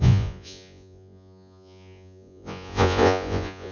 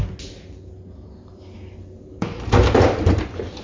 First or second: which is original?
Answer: second